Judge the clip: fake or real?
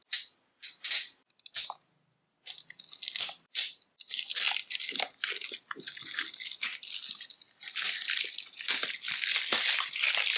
real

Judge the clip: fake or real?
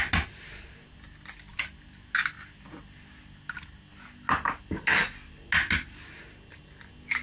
real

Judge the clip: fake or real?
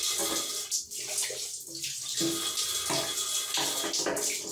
real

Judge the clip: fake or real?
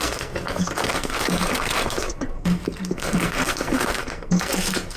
fake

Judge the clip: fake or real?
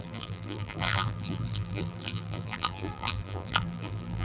fake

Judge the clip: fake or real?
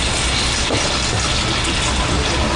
real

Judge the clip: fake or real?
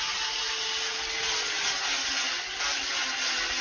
real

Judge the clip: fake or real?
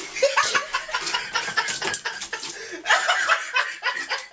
real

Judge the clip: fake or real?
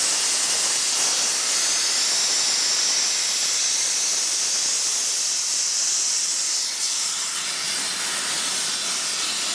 real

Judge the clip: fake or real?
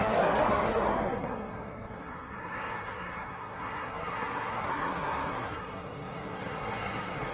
fake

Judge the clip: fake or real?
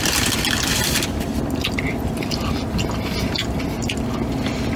real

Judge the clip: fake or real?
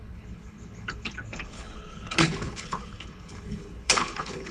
fake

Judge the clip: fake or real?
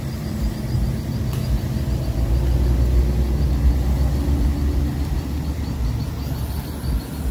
real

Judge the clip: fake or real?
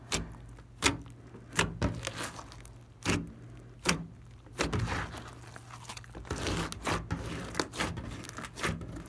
real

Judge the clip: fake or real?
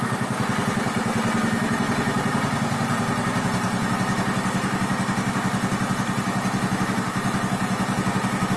real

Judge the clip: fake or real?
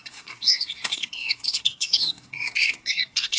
fake